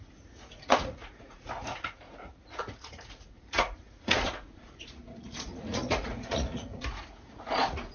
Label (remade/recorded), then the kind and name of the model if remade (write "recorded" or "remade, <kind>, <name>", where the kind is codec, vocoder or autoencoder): remade, vocoder, Vocos